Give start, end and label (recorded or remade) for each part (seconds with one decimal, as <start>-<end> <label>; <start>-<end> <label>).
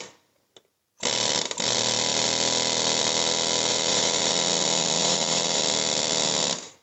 0.0-3.7 recorded; 3.7-4.3 remade; 4.3-5.0 recorded; 5.0-5.6 remade; 5.6-6.8 recorded